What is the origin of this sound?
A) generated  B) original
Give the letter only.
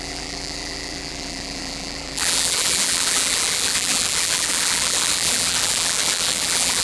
A